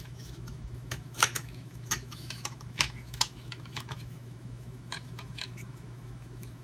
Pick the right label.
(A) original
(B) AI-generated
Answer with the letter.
B